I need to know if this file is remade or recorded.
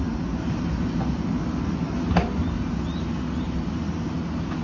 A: recorded